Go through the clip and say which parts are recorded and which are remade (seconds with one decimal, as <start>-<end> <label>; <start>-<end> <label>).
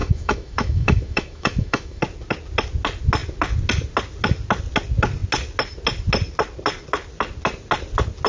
0.0-2.0 remade; 2.0-8.3 recorded